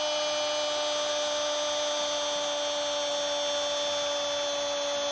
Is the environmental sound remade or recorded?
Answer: recorded